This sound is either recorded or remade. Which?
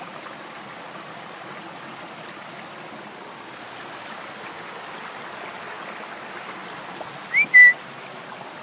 recorded